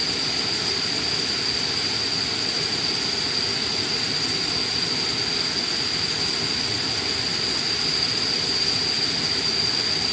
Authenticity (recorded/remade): recorded